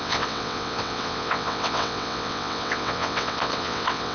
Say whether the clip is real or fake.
fake